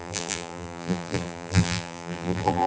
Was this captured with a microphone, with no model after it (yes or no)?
no